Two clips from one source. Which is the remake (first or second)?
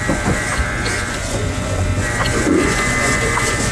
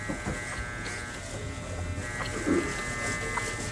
first